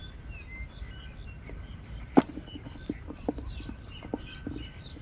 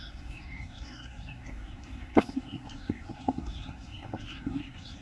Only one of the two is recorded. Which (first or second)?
first